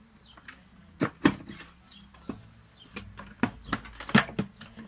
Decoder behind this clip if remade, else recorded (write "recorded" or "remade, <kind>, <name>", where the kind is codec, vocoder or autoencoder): recorded